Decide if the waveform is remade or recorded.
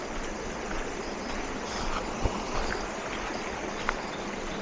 recorded